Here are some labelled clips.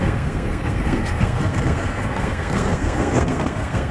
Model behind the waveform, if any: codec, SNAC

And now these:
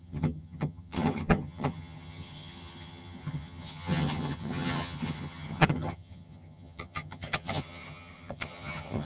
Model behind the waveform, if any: vocoder, HiFi-GAN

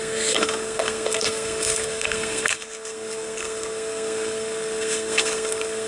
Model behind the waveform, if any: codec, SNAC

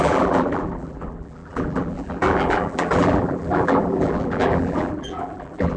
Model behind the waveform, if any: vocoder, BigVGAN v2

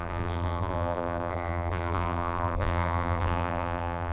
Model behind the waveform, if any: vocoder, BigVGAN v2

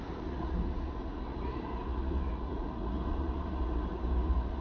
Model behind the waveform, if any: vocoder, Vocos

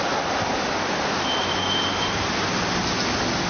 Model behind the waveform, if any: none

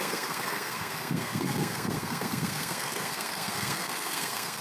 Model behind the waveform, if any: codec, SNAC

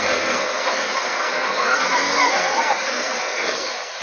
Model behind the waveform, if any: codec, SNAC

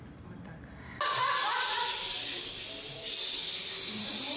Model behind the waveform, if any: none